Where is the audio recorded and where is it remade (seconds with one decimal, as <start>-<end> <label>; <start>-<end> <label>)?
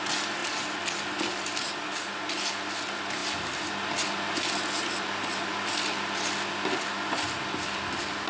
0.0-8.3 recorded